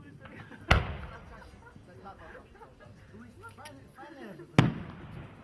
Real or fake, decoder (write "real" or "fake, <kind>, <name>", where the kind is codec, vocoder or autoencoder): real